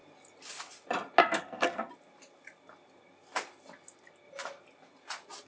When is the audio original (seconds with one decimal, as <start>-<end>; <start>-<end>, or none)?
0.0-1.2; 1.9-5.5